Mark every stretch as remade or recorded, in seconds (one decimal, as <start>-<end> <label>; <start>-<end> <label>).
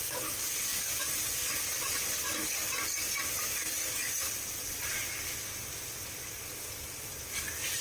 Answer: 0.0-0.7 recorded; 0.7-1.5 remade; 1.5-7.8 recorded